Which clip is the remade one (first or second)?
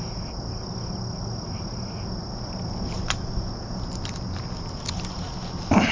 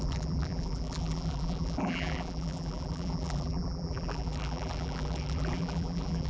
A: second